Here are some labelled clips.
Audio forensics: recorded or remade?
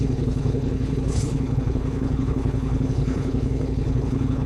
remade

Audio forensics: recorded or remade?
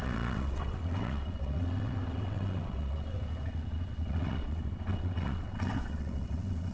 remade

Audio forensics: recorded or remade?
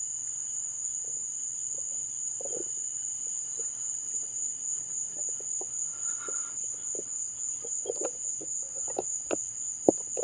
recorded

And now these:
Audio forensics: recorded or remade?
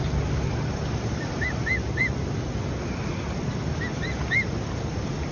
recorded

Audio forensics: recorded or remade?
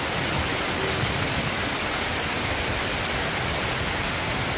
recorded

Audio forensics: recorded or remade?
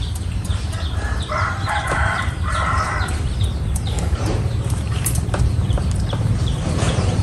remade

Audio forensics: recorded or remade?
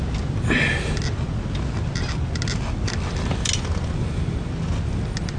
recorded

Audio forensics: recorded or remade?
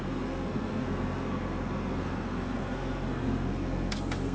remade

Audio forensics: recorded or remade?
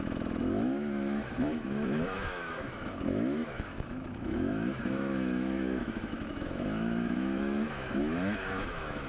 remade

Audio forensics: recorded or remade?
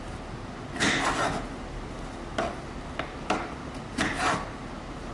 recorded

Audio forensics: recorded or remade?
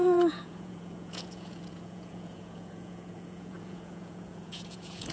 remade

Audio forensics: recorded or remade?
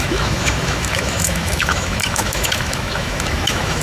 remade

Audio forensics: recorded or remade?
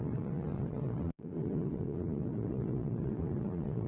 remade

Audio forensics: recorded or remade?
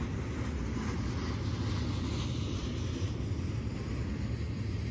recorded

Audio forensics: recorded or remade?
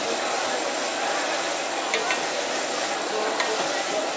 recorded